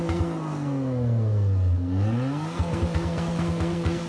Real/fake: fake